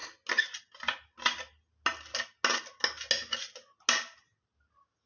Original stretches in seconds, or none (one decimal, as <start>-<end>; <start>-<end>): 0.0-5.1